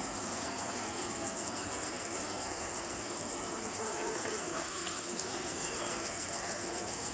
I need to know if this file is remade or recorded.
remade